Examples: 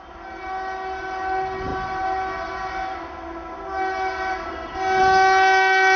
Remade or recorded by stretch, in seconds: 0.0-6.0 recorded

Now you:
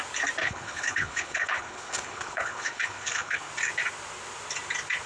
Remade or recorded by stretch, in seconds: 0.0-0.4 recorded; 0.4-3.5 remade; 3.5-5.1 recorded

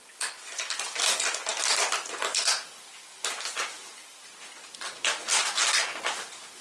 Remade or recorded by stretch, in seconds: 0.0-6.6 recorded

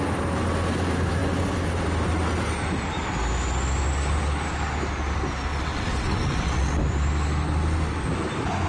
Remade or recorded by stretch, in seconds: 0.0-5.5 recorded; 5.5-6.8 remade; 6.8-8.7 recorded